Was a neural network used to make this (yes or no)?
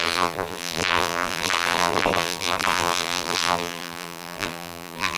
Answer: yes